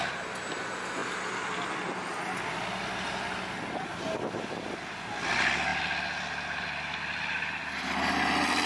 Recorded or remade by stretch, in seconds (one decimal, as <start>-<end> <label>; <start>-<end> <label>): 0.0-8.7 recorded